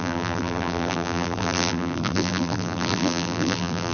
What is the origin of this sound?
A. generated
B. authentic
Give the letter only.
A